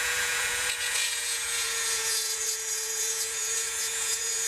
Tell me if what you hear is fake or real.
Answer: fake